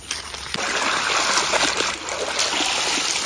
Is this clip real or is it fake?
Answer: real